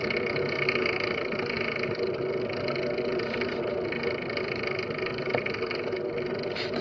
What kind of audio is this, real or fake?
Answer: real